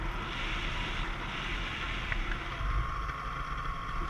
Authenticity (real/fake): real